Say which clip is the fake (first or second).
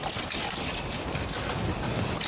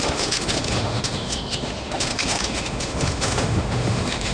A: second